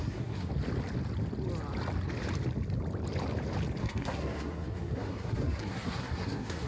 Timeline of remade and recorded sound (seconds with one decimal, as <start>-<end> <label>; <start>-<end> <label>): 0.0-0.5 remade; 0.5-3.8 recorded; 3.8-6.7 remade